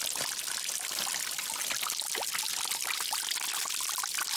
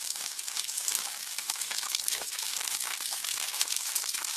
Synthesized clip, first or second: second